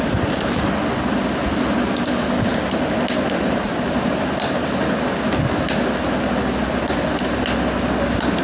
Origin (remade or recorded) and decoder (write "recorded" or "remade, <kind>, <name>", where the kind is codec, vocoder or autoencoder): recorded